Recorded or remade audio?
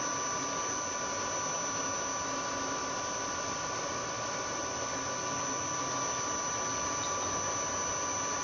recorded